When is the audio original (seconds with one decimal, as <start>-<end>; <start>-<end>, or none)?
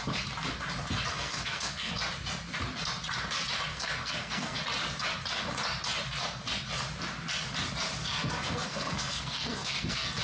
0.0-1.1; 1.9-3.7; 4.6-8.0